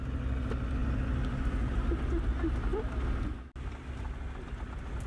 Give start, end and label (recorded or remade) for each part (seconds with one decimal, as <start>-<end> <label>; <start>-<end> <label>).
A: 0.0-5.1 recorded